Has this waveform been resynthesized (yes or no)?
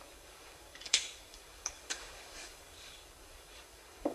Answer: yes